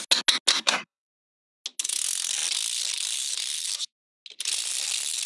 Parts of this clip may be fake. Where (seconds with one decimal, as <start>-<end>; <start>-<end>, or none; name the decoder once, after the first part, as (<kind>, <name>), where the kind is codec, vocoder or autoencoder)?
0.5-1.3 (codec, SNAC)